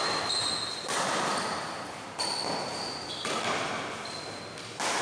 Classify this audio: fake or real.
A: real